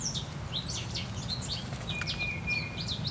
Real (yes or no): yes